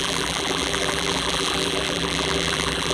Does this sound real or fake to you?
fake